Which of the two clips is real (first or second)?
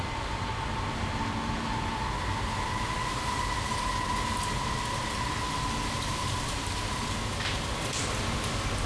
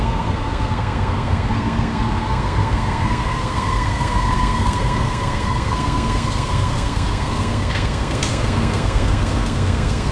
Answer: first